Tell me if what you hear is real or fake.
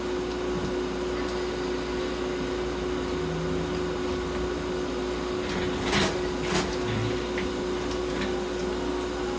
real